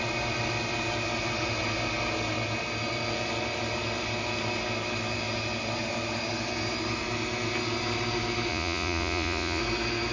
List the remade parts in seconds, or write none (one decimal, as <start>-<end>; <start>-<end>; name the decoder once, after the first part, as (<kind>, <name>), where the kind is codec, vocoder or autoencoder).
8.5-9.6 (vocoder, Vocos)